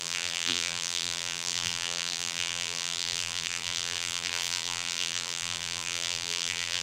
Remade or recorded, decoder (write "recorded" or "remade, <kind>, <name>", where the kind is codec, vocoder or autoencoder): remade, vocoder, BigVGAN v2